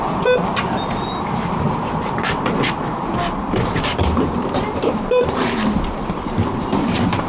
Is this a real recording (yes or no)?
no